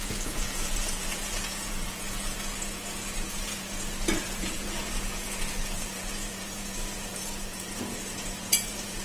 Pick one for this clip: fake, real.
fake